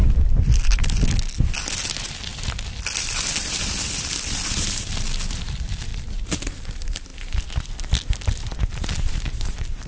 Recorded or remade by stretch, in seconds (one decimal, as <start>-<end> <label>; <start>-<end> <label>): 0.0-5.3 recorded; 5.3-5.9 remade; 5.9-6.4 recorded; 6.4-7.1 remade; 7.1-8.6 recorded; 8.6-9.9 remade